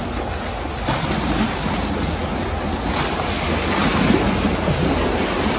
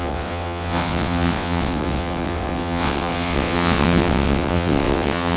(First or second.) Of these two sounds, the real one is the first